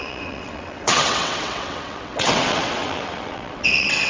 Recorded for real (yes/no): no